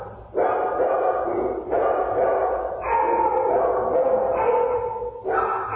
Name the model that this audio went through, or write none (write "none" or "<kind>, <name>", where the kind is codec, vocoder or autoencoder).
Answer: none